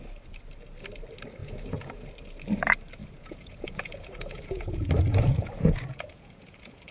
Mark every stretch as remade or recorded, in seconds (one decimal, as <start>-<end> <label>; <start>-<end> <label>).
0.0-1.4 recorded; 1.4-2.1 remade; 2.1-3.0 recorded; 3.0-6.9 remade